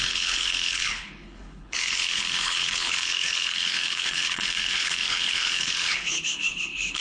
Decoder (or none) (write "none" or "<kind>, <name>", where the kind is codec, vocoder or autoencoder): codec, HILCodec